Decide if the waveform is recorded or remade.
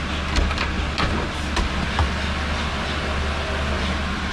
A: recorded